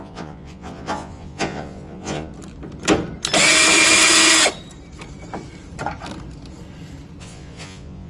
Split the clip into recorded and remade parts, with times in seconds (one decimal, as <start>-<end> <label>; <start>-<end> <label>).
0.0-2.3 remade; 2.3-7.2 recorded; 7.2-8.1 remade